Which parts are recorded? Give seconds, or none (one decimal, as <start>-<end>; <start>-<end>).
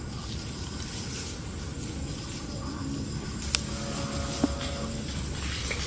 0.0-5.9